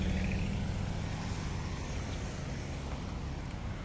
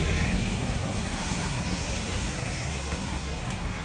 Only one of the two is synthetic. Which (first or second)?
second